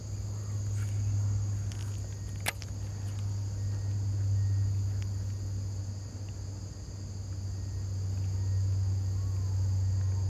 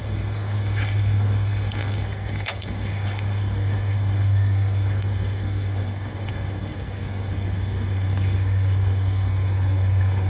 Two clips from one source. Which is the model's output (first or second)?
second